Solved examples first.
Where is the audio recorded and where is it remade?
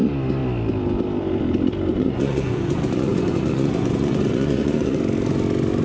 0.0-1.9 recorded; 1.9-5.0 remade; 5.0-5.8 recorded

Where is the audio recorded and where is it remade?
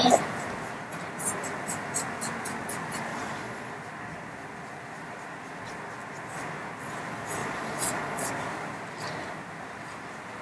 0.0-3.1 recorded; 3.1-3.7 remade; 3.7-7.4 recorded; 7.4-8.3 remade; 8.3-10.4 recorded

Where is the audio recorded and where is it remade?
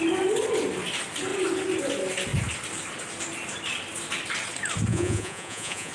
0.0-4.9 recorded; 4.9-5.9 remade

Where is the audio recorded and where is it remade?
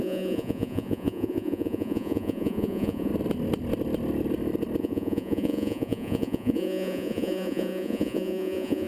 0.0-3.1 remade; 3.1-4.8 recorded; 4.8-8.9 remade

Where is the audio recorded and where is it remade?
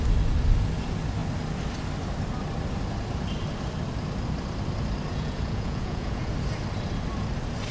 0.0-5.1 recorded; 5.1-6.3 remade; 6.3-7.7 recorded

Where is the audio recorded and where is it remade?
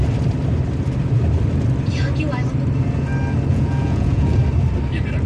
0.0-3.5 recorded; 3.5-4.4 remade; 4.4-5.3 recorded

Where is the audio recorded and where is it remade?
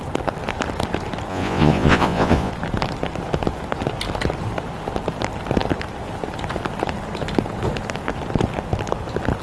0.0-1.3 recorded; 1.3-2.5 remade; 2.5-9.4 recorded